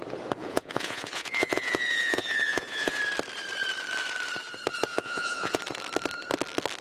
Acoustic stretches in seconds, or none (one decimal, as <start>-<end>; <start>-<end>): 0.0-0.4; 3.0-4.9; 5.6-6.8